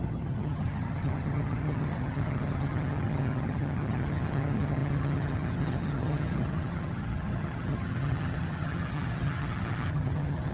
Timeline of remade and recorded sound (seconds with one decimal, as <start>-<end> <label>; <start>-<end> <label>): 0.0-10.5 remade